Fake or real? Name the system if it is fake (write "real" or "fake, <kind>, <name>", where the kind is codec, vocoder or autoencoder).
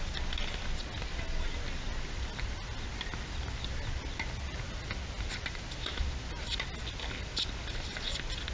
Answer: real